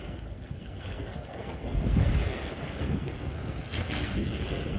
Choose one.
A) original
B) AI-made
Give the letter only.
B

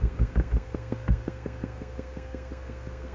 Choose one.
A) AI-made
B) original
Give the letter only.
A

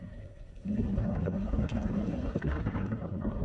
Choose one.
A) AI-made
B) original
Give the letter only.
A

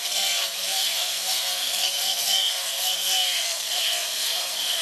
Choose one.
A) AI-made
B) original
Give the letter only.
A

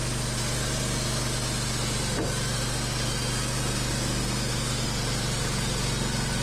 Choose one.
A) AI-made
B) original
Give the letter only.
B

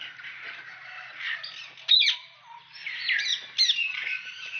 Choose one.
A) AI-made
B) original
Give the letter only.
B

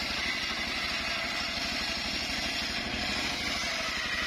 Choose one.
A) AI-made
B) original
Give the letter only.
B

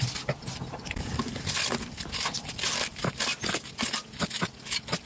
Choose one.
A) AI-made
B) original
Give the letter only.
B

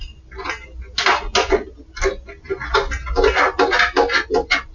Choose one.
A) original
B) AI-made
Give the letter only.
A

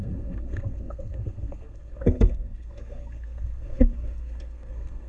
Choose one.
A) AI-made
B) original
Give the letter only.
A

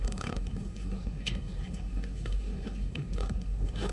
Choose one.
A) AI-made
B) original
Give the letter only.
A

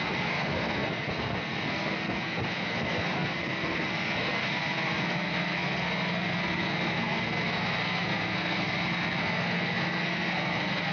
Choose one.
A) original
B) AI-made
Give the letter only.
B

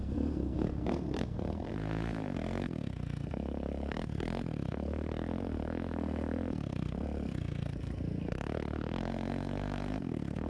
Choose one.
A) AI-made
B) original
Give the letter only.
A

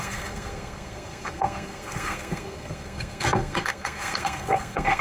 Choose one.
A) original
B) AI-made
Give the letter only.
B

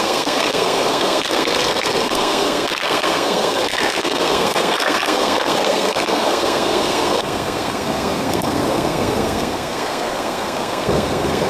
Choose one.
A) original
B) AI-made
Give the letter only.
B